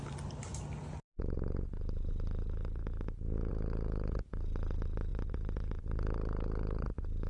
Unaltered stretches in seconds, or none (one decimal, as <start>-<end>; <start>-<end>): 0.0-7.3